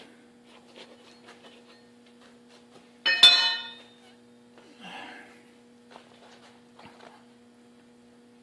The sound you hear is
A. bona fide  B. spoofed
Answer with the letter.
A